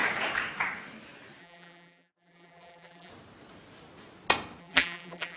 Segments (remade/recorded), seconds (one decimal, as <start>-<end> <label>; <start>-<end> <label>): 0.0-1.4 recorded; 1.4-3.1 remade; 3.1-4.6 recorded; 4.6-5.4 remade